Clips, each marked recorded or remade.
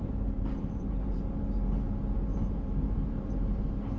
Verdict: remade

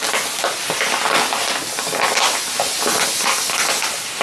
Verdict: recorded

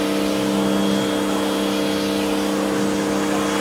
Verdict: recorded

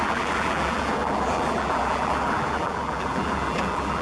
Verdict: remade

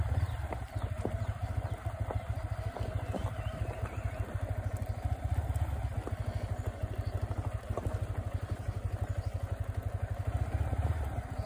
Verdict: recorded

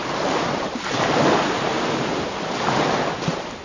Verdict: recorded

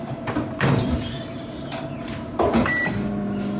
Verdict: remade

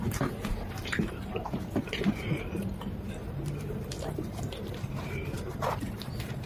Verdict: remade